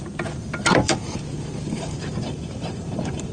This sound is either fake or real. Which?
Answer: fake